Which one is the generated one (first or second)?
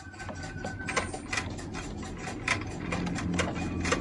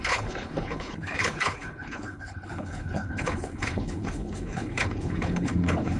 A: second